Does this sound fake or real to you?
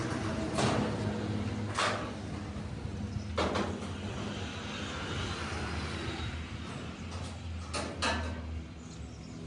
real